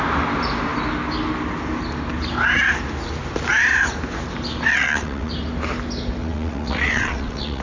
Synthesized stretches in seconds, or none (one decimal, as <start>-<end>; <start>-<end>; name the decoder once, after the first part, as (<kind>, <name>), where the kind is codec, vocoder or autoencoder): 4.7-5.3 (vocoder, WaveNeXt); 6.2-7.6